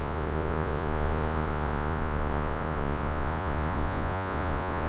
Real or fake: fake